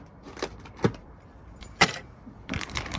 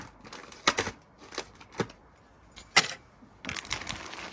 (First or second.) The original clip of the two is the second